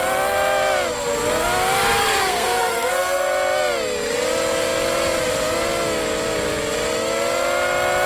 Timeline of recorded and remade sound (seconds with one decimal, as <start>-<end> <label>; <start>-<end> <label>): 0.0-2.0 recorded; 2.0-2.9 remade; 2.9-8.1 recorded